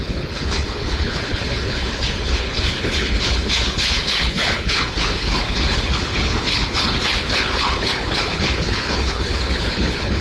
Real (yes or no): no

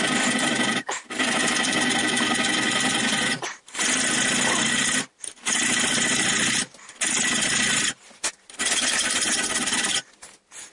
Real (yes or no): yes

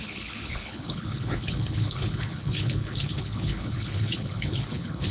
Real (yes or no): no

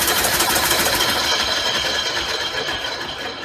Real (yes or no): no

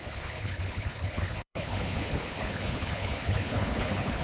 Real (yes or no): no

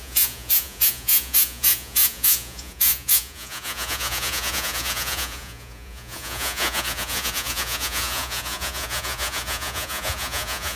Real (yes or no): no